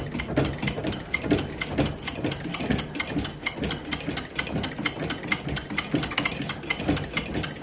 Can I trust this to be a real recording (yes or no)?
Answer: yes